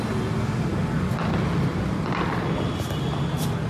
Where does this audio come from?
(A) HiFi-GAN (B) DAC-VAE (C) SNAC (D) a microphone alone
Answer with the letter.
D